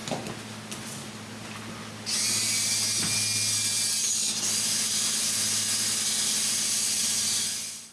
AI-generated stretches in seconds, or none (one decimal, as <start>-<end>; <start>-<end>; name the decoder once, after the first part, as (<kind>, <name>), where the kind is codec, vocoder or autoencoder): none